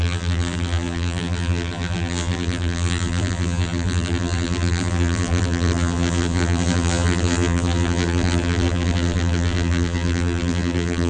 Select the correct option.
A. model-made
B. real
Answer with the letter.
A